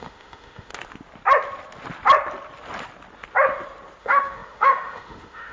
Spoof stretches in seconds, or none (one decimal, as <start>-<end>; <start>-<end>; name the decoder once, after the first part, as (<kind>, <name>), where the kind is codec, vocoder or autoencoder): 0.0-0.7 (autoencoder, DAC-VAE); 4.0-5.5